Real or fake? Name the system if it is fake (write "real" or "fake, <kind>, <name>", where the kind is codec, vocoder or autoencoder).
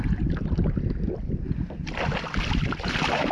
real